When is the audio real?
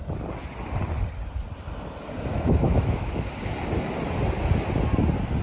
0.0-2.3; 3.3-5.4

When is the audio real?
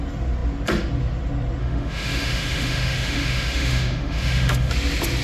0.0-1.6; 4.7-5.2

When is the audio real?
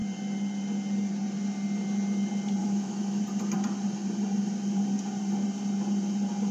0.0-2.6; 3.2-6.5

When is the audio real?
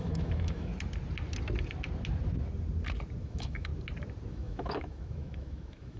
0.7-3.2; 3.7-4.3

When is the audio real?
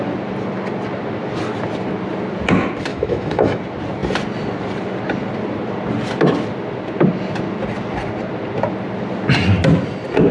0.0-2.9; 3.6-10.3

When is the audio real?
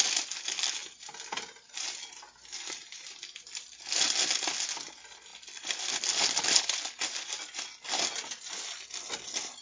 0.0-9.6